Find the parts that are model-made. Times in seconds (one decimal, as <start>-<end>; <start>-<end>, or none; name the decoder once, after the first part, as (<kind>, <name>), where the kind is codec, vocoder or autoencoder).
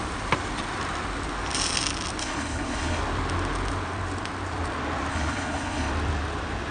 2.2-3.0 (codec, HILCodec); 5.1-5.9